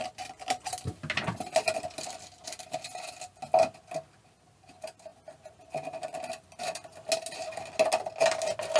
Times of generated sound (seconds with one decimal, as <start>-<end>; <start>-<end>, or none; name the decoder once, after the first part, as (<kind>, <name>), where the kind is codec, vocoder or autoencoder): none